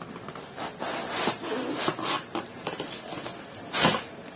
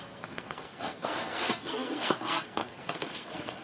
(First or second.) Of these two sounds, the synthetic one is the second